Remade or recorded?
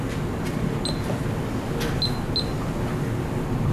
recorded